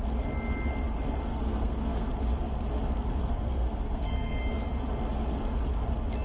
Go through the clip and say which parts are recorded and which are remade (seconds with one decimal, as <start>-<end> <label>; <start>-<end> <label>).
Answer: 0.0-1.3 recorded; 1.3-2.1 remade; 2.1-3.2 recorded; 3.2-4.4 remade; 4.4-6.2 recorded